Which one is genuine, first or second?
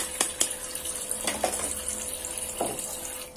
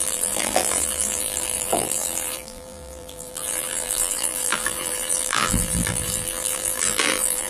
first